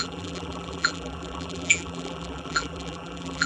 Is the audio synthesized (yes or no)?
yes